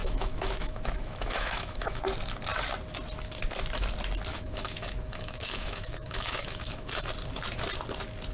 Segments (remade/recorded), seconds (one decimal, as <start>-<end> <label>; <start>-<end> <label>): 0.0-2.0 remade; 2.0-4.3 recorded; 4.3-7.0 remade; 7.0-8.3 recorded